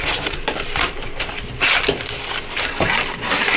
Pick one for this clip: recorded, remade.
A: recorded